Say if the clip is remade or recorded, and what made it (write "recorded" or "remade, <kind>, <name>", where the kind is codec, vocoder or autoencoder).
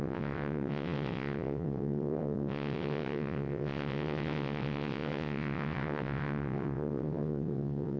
remade, vocoder, WaveNeXt